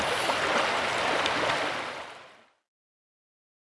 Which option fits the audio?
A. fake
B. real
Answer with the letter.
B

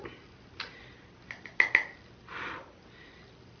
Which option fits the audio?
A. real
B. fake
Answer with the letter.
A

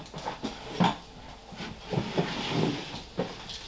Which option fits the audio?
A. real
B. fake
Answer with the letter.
A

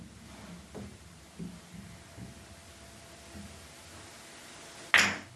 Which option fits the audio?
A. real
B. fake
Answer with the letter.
A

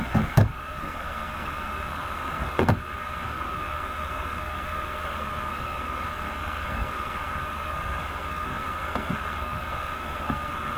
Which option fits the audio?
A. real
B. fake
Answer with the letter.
B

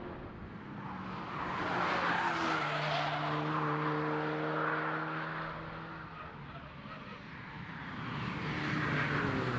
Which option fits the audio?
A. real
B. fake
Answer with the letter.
A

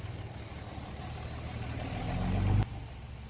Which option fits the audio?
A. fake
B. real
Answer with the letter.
B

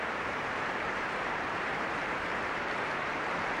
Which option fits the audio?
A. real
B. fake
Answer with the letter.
B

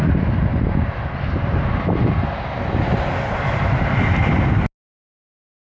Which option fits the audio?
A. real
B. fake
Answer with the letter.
A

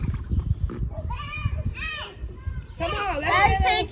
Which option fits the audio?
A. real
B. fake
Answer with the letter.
A